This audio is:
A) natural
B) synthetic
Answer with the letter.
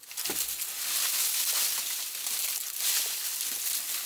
A